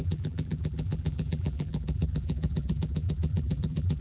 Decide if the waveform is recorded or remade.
remade